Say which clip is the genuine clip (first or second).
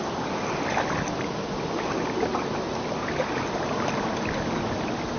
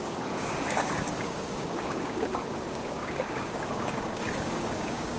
first